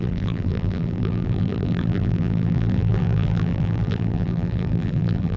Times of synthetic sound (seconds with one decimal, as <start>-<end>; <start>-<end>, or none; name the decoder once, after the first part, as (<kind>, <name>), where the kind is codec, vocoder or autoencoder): 0.0-5.4 (vocoder, BigVGAN v2)